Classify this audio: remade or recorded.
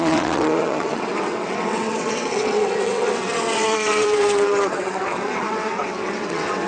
remade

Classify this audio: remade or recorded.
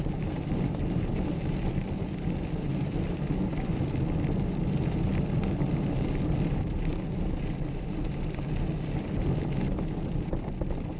recorded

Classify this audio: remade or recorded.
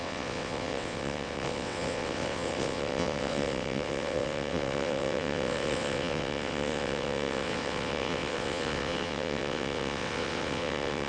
remade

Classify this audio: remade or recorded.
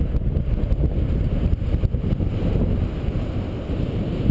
recorded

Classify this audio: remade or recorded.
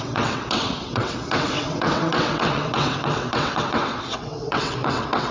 remade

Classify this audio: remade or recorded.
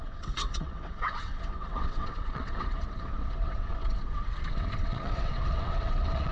remade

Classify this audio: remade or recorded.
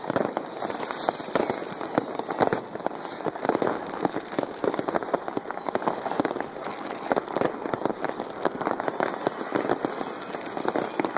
recorded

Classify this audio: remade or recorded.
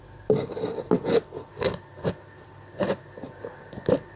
recorded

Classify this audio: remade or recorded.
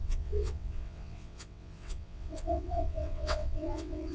remade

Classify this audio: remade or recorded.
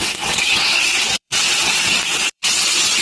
remade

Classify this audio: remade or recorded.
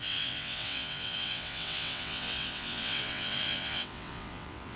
remade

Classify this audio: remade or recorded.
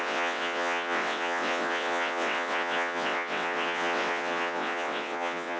remade